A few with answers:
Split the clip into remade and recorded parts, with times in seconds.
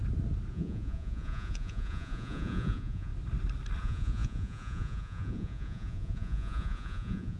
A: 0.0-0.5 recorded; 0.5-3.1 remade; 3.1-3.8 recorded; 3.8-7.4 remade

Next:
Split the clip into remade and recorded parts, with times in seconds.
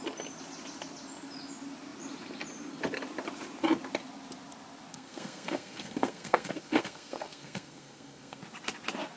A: 0.0-4.9 recorded; 4.9-8.4 remade; 8.4-9.2 recorded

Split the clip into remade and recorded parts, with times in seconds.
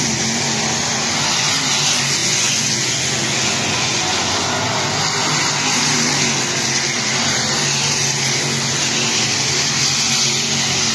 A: 0.0-2.2 recorded; 2.2-4.3 remade; 4.3-10.9 recorded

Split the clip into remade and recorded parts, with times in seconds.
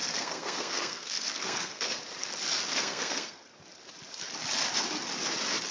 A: 0.0-2.0 remade; 2.0-2.7 recorded; 2.7-3.5 remade; 3.5-5.7 recorded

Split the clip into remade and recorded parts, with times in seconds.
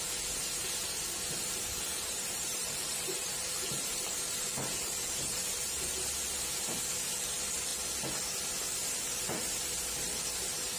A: 0.0-1.9 recorded; 1.9-6.1 remade; 6.1-10.8 recorded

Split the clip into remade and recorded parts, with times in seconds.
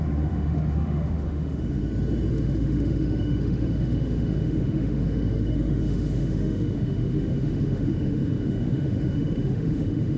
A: 0.0-1.8 remade; 1.8-2.3 recorded; 2.3-10.2 remade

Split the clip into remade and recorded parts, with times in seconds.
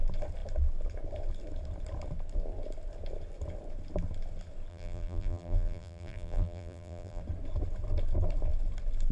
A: 0.0-4.7 recorded; 4.7-7.2 remade; 7.2-9.1 recorded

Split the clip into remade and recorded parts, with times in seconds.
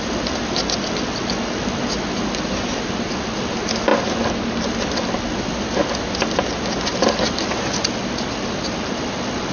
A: 0.0-9.5 recorded